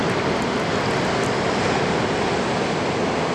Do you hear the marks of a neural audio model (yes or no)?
no